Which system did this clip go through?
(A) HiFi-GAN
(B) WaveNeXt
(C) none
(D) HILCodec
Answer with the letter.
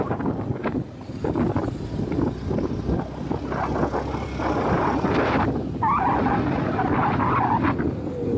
C